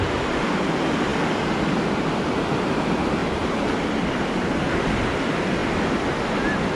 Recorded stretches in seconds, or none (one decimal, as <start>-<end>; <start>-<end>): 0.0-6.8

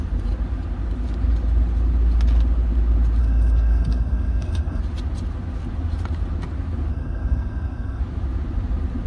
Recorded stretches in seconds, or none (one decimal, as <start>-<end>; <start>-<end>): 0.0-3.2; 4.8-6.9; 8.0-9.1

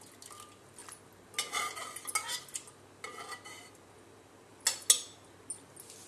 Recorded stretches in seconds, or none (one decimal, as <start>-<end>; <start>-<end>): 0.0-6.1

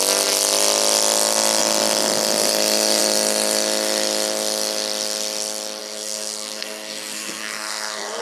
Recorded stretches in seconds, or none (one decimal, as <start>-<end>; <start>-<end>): 0.0-5.8